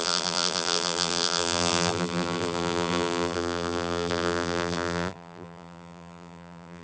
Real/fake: fake